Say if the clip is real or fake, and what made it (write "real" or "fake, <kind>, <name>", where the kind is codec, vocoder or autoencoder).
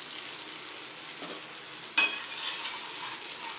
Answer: real